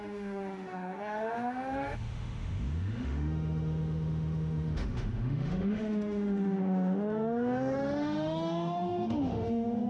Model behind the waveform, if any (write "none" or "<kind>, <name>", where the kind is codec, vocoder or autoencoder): autoencoder, DAC-VAE